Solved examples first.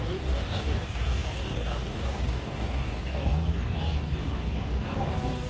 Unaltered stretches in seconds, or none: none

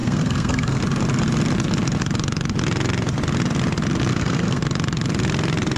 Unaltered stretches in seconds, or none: 0.8-4.1; 4.6-5.8

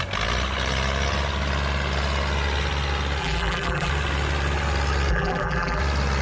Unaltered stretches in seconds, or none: 0.0-3.2; 3.9-5.1; 5.8-6.2

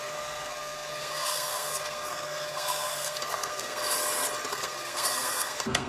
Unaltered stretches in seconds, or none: 3.8-4.5

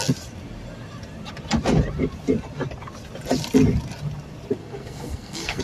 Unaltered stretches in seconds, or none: 0.0-4.6

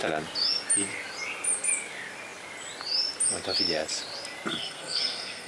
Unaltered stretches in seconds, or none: 0.0-4.5